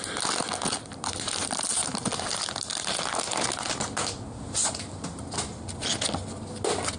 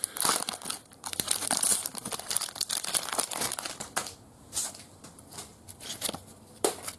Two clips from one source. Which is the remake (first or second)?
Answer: second